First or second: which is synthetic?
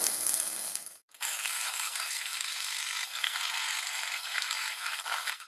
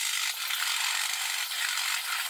first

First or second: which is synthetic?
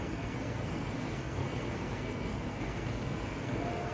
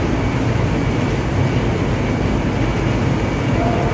first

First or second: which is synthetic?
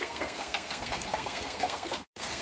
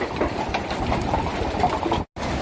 first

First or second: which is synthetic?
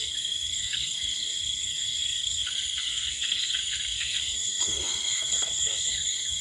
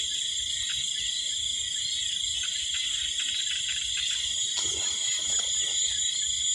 first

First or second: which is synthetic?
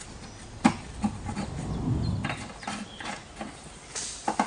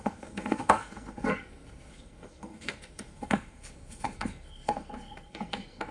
second